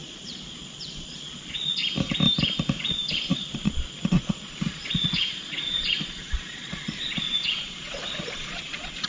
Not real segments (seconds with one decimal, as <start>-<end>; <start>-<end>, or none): 0.0-1.8; 2.9-9.1